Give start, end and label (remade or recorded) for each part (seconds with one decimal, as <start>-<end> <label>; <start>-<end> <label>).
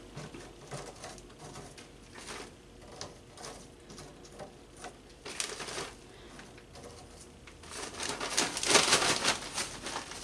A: 0.0-10.2 recorded